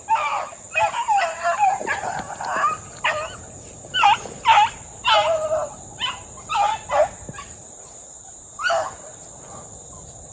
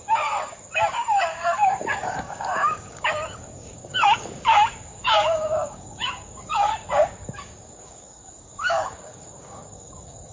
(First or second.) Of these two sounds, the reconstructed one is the second